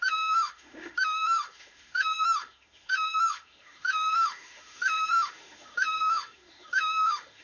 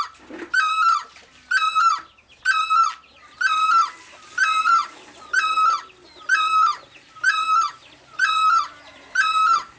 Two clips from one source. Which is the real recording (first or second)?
second